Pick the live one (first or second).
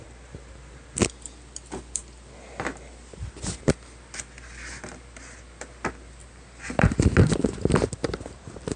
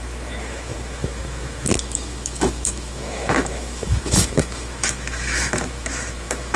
first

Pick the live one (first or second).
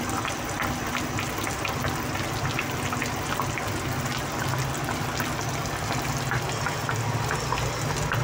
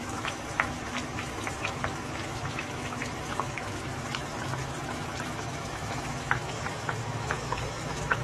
first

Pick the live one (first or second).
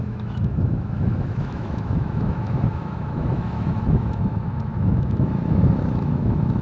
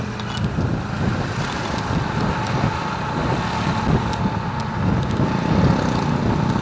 second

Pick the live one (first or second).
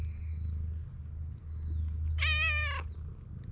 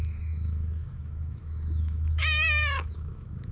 first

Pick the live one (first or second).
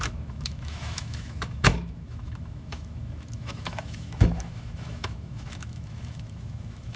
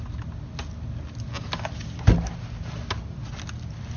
second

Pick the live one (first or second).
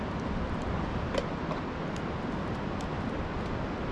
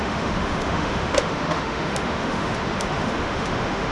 first